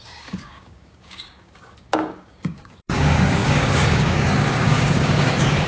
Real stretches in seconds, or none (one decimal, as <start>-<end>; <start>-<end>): none